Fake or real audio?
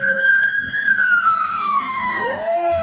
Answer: fake